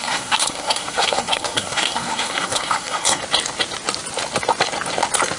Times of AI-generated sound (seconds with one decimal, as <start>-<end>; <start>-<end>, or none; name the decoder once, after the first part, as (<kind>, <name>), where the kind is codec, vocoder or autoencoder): 0.0-3.2 (codec, SNAC)